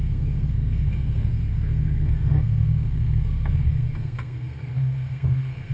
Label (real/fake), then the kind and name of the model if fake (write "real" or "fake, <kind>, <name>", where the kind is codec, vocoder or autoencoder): fake, codec, SNAC